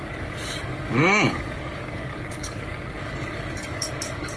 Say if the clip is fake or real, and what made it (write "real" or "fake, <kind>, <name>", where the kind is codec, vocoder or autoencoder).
fake, codec, DAC